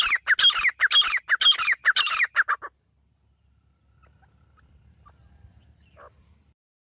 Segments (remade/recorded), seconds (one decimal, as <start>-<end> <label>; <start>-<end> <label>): 0.0-6.9 recorded